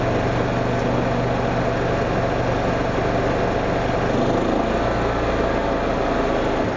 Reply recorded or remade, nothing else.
recorded